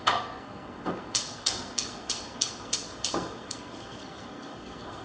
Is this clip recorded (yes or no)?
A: no